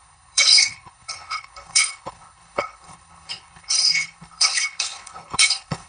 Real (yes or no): no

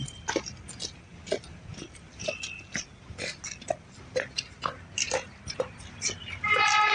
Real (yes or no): yes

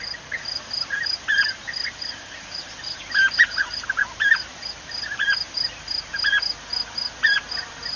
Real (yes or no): yes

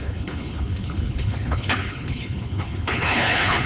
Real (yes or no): no